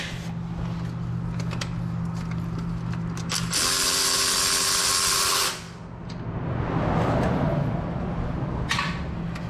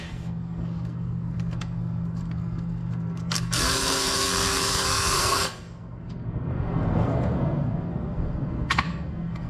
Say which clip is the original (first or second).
first